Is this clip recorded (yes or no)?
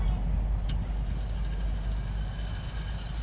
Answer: yes